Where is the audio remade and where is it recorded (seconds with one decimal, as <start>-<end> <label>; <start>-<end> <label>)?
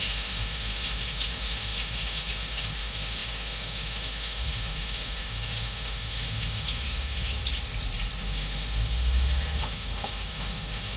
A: 0.0-7.4 remade; 7.4-8.2 recorded; 8.2-11.0 remade